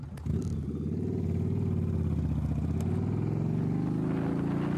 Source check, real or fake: real